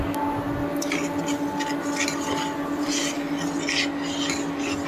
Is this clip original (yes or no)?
yes